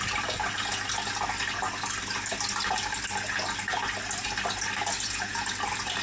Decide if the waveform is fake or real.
real